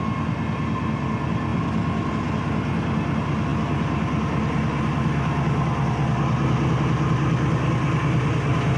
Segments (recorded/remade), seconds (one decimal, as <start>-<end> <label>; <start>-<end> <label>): 0.0-8.8 recorded